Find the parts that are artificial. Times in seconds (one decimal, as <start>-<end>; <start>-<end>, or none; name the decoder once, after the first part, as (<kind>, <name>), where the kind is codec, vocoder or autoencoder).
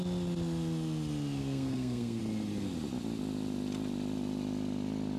1.4-2.2 (codec, SNAC)